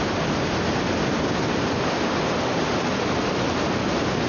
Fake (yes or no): no